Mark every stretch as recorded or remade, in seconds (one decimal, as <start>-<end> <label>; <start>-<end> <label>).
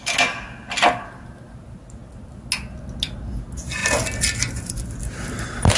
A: 0.0-5.8 recorded